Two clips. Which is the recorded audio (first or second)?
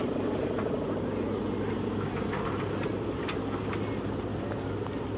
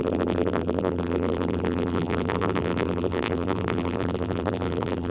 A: first